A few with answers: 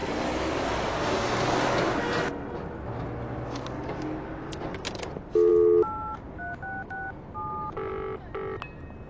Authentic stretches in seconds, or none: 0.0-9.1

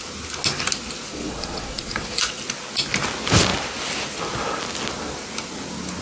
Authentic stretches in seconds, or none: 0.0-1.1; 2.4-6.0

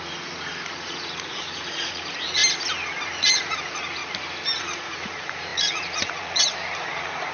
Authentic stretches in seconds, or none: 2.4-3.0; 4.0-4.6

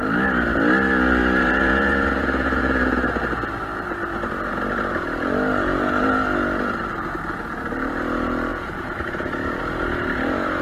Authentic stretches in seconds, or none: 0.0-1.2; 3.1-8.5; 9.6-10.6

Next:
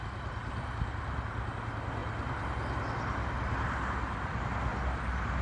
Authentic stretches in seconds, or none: 0.0-5.4

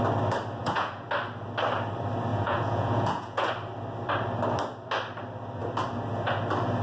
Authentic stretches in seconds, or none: 0.0-0.6; 1.1-2.3; 3.5-6.8